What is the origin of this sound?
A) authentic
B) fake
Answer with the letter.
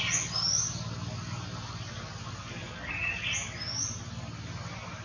A